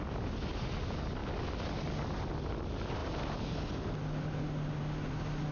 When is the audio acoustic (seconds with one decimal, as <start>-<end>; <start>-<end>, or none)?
0.0-5.5